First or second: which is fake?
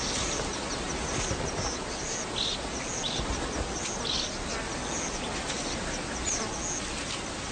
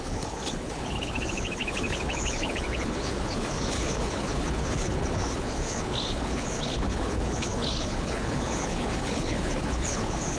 second